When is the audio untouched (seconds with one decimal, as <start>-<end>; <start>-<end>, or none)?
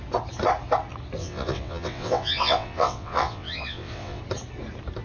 0.0-1.2; 4.2-5.0